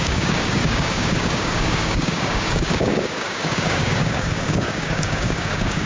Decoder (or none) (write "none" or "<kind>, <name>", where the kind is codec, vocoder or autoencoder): codec, DAC